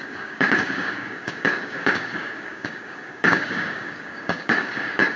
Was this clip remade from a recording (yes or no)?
yes